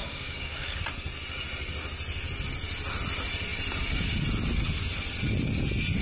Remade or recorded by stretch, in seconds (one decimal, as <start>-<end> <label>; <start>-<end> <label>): 0.0-0.8 remade; 0.8-6.0 recorded